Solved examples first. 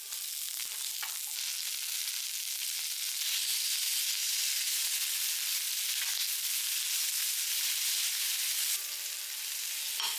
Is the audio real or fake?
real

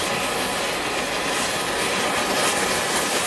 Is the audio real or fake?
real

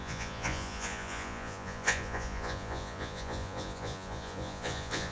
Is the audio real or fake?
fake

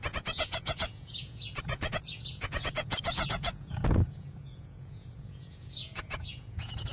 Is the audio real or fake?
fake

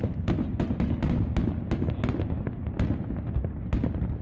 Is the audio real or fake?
real